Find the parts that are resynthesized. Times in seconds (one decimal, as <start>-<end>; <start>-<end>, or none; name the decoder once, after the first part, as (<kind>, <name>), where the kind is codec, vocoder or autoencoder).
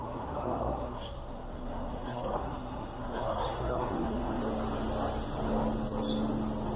0.0-4.4 (codec, SNAC)